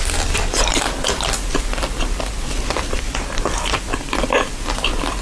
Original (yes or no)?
yes